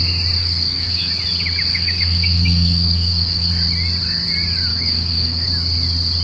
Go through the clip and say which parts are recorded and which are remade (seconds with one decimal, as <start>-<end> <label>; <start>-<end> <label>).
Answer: 0.0-0.4 recorded; 0.4-1.1 remade; 1.1-1.7 recorded; 1.7-3.5 remade; 3.5-4.7 recorded; 4.7-5.5 remade; 5.5-6.2 recorded